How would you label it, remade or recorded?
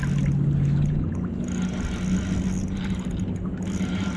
recorded